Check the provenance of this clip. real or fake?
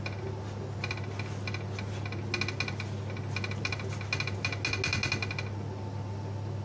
real